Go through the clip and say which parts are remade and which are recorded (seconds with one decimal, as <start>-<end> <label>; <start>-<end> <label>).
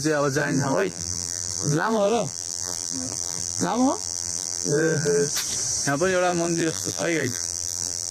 0.0-0.4 recorded; 0.4-5.3 remade; 5.3-6.3 recorded; 6.3-8.1 remade